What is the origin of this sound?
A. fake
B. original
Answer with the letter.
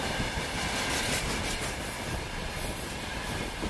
B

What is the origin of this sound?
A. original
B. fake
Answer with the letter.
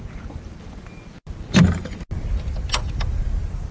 A